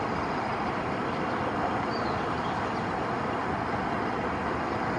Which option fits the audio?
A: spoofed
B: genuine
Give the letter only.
B